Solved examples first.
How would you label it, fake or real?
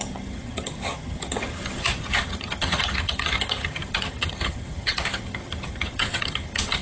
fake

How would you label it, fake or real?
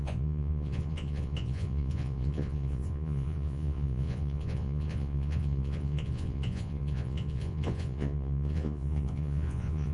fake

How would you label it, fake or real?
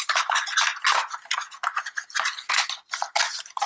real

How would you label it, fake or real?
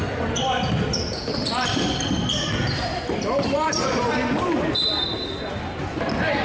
fake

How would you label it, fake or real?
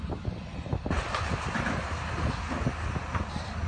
real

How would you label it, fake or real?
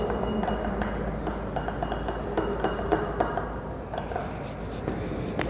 real